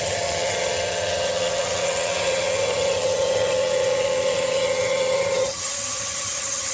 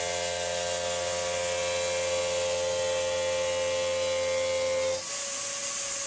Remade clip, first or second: first